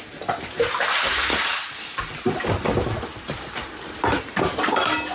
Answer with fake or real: real